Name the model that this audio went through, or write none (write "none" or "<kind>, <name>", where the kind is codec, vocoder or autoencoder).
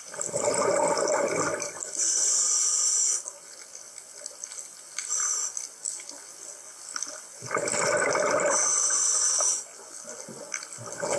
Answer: none